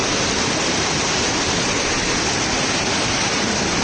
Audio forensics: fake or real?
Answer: real